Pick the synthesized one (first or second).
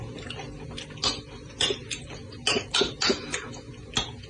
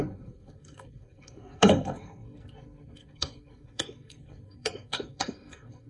second